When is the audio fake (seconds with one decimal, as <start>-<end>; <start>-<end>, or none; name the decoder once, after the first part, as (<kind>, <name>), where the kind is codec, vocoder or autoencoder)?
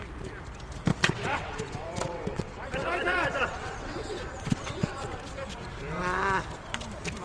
0.9-5.2 (vocoder, WaveNeXt)